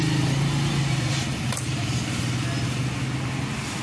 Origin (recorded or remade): recorded